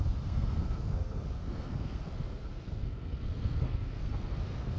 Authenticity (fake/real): fake